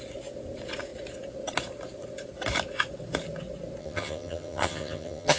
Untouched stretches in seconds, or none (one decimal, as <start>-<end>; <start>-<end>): 0.0-3.8